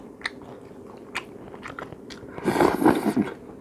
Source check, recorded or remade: recorded